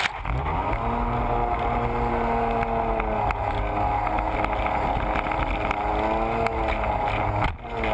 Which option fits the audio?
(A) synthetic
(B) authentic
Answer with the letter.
B